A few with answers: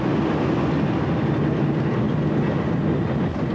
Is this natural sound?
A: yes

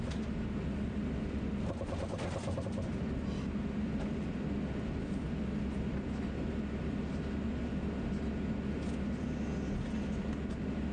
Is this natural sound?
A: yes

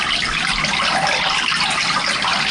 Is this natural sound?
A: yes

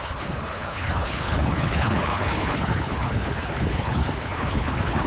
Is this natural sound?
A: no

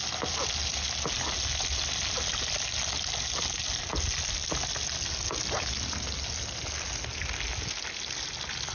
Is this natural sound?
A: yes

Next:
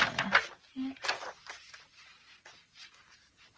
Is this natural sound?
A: yes